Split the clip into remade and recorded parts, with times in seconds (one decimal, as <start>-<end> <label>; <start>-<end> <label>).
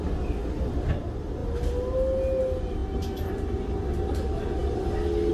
0.0-2.8 recorded; 2.8-4.0 remade; 4.0-5.3 recorded